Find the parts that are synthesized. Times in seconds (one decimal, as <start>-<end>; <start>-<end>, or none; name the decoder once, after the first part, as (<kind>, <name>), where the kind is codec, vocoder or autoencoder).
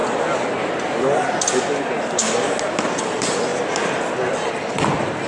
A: none